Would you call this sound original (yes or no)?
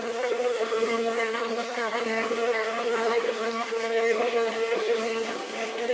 no